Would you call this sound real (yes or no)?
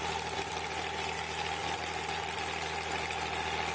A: yes